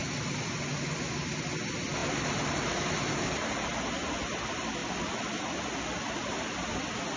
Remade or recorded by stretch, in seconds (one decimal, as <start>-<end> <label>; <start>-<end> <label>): 0.0-7.2 recorded